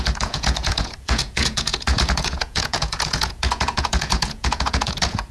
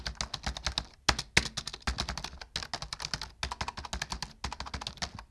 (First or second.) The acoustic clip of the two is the second